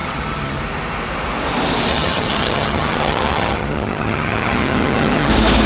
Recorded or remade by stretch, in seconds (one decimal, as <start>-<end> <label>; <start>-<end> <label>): 0.0-0.6 remade; 0.6-1.9 recorded; 1.9-5.3 remade; 5.3-5.7 recorded